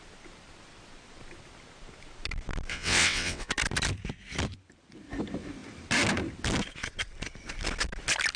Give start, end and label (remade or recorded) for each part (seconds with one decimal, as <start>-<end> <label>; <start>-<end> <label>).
0.0-2.7 recorded; 2.7-3.5 remade; 3.5-8.4 recorded

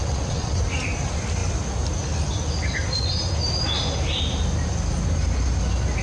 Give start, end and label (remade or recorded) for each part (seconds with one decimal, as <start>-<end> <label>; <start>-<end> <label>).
0.0-0.6 remade; 0.6-6.0 recorded

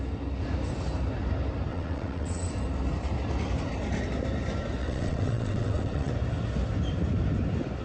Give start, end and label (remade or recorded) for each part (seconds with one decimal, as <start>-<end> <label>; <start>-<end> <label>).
0.0-1.7 recorded; 1.7-2.5 remade; 2.5-4.8 recorded; 4.8-6.1 remade; 6.1-7.8 recorded

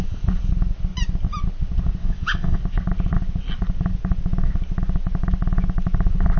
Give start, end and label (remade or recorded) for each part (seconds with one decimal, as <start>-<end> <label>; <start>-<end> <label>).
0.0-2.0 recorded; 2.0-2.6 remade; 2.6-6.4 recorded

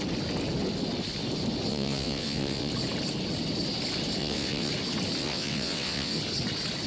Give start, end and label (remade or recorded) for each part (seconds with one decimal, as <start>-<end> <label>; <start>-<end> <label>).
0.0-1.7 recorded; 1.7-2.7 remade; 2.7-4.2 recorded; 4.2-4.7 remade; 4.7-5.2 recorded; 5.2-6.2 remade; 6.2-6.9 recorded

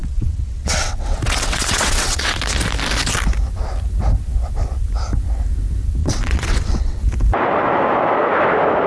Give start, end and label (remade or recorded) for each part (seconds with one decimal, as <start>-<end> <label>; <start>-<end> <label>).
0.0-2.4 remade; 2.4-6.0 recorded; 6.0-7.0 remade; 7.0-8.9 recorded

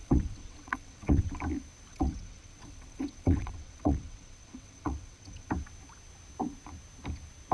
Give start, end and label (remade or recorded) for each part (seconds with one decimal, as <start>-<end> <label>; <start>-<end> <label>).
0.0-1.3 remade; 1.3-1.9 recorded; 1.9-5.5 remade; 5.5-7.5 recorded

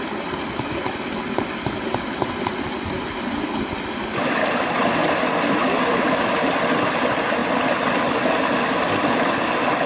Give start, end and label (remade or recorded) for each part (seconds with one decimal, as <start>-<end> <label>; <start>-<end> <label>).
0.0-9.9 recorded